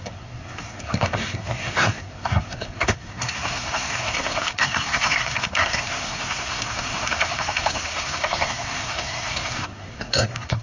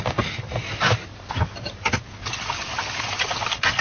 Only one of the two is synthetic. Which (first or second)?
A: first